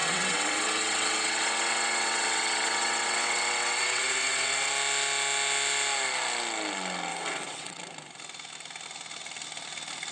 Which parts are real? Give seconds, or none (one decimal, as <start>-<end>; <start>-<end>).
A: 4.7-7.1; 7.8-10.1